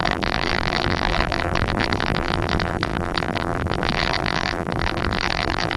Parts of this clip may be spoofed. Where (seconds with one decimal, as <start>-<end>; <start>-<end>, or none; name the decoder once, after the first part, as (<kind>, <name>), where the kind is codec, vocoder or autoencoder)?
0.0-5.8 (vocoder, BigVGAN v2)